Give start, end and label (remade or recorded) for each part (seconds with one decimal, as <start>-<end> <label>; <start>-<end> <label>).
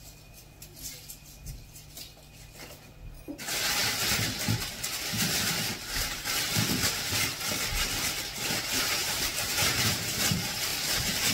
0.0-9.0 recorded; 9.0-10.0 remade; 10.0-11.3 recorded